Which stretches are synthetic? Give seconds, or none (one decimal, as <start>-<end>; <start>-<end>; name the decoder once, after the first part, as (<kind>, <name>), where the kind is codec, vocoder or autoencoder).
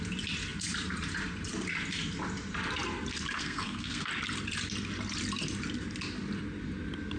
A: 3.4-4.1 (codec, SNAC)